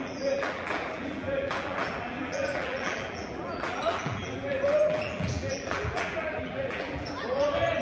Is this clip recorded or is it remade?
remade